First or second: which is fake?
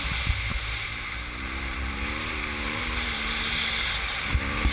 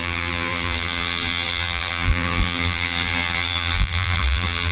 second